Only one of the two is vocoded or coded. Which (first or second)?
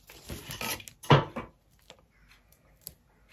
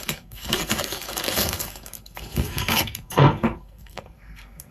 second